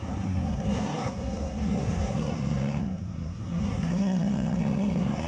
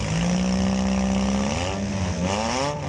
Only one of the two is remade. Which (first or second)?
first